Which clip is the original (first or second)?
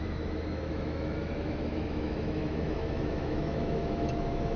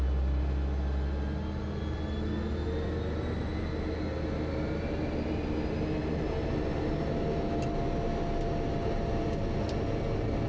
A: second